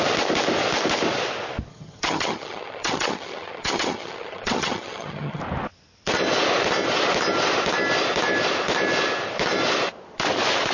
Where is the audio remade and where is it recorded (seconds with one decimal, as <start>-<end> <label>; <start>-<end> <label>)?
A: 0.0-1.7 recorded; 1.7-5.4 remade; 5.4-10.7 recorded